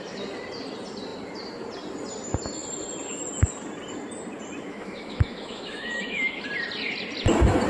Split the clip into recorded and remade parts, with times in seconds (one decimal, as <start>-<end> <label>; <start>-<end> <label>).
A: 0.0-4.7 recorded; 4.7-6.4 remade; 6.4-7.7 recorded